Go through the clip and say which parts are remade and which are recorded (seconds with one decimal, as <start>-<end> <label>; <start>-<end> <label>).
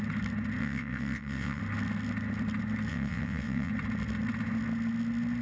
0.0-0.6 recorded; 0.6-1.6 remade; 1.6-2.9 recorded; 2.9-3.7 remade; 3.7-5.4 recorded